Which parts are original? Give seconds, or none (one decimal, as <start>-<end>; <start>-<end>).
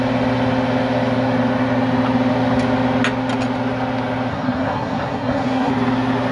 0.0-4.3; 5.7-6.3